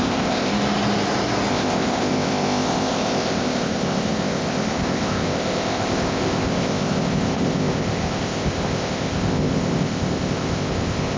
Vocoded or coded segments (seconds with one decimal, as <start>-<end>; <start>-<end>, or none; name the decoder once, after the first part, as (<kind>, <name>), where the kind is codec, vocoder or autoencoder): 0.0-0.5 (codec, ZipCodec); 1.5-11.2